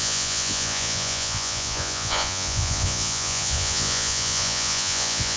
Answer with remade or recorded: remade